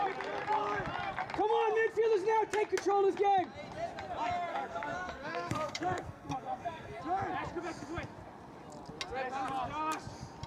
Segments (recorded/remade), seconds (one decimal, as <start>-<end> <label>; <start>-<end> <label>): 0.0-4.5 recorded; 4.5-7.0 remade; 7.0-10.5 recorded

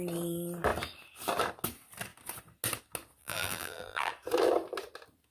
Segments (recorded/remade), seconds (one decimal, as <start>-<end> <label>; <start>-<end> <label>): 0.0-3.2 recorded; 3.2-4.1 remade; 4.1-5.3 recorded

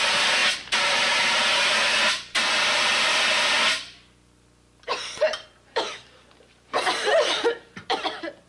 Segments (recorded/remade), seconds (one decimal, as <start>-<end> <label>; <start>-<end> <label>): 0.0-0.4 remade; 0.4-2.6 recorded; 2.6-8.5 remade